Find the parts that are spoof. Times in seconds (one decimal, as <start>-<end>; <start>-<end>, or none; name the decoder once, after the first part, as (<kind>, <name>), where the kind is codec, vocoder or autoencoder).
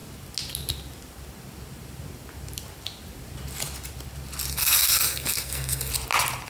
4.5-5.9 (codec, SNAC)